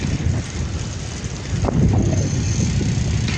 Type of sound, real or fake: real